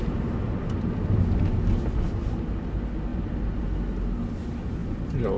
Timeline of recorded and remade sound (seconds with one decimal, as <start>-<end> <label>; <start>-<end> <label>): 0.0-3.1 recorded; 3.1-3.6 remade; 3.6-4.8 recorded; 4.8-5.4 remade